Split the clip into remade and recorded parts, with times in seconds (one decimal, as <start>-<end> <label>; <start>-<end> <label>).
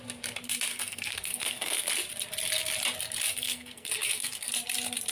0.0-0.7 recorded; 0.7-1.9 remade; 1.9-3.3 recorded; 3.3-4.5 remade; 4.5-5.1 recorded